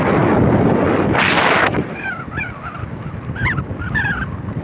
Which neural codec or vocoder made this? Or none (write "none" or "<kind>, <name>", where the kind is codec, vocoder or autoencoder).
none